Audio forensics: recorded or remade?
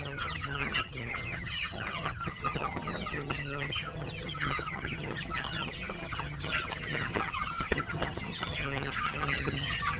remade